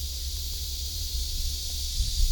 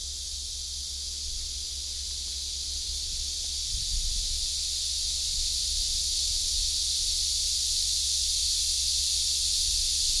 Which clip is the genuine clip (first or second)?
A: second